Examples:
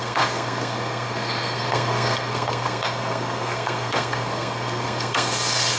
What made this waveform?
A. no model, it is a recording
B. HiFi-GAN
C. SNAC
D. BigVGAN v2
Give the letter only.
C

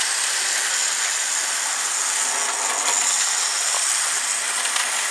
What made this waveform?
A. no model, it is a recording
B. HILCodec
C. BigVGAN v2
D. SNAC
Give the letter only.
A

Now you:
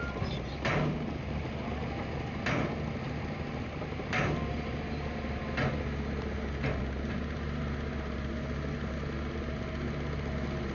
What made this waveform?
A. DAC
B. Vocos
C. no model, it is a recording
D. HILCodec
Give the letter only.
C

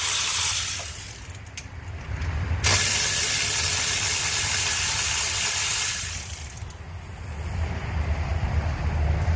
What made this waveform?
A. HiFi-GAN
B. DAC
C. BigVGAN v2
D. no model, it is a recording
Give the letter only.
D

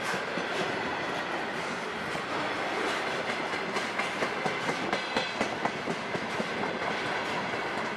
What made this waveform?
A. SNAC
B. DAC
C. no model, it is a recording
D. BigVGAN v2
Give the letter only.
C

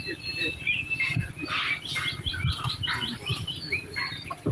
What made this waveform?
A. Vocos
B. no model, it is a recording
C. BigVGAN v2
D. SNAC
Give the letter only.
B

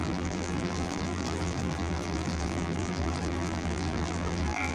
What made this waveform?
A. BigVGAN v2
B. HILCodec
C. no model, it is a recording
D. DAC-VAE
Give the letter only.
A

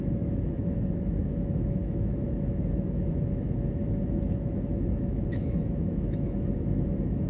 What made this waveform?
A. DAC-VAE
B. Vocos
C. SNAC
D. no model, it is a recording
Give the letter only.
A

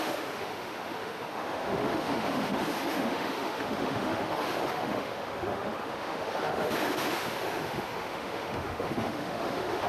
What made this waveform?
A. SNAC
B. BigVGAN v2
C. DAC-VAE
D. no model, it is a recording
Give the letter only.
C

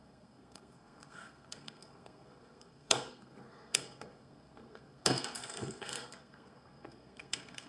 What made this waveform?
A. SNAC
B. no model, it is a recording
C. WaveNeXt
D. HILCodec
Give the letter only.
A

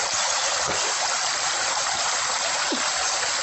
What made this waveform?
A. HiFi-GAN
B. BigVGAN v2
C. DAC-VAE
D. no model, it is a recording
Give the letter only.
B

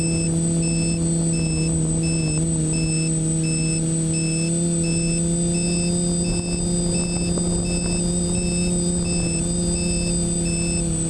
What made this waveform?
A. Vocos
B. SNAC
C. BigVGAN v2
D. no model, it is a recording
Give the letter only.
D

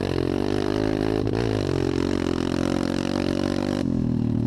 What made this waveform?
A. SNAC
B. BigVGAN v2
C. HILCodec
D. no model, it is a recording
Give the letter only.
B